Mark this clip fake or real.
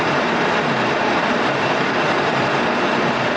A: fake